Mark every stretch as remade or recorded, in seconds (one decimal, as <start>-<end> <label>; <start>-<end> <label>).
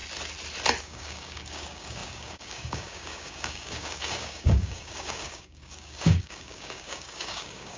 0.0-0.8 recorded; 0.8-7.8 remade